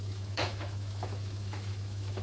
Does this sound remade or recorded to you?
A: remade